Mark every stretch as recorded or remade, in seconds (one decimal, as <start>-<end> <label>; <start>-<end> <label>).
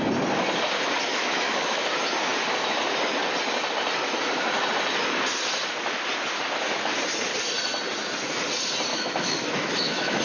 0.0-1.1 recorded; 1.1-1.8 remade; 1.8-8.9 recorded; 8.9-10.2 remade